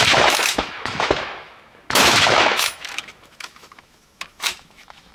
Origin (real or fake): fake